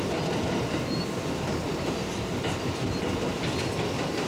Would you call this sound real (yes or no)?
yes